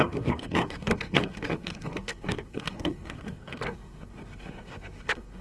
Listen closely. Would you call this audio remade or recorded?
remade